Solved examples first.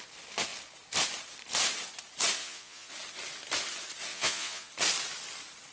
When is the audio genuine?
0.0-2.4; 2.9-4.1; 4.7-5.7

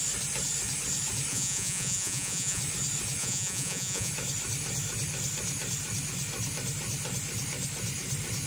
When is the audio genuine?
0.0-1.3; 2.6-3.2; 4.1-8.5

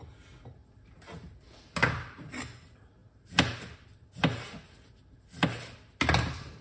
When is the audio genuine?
0.0-6.6